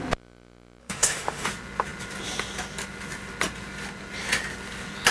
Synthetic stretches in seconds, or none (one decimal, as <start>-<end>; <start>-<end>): 0.8-1.5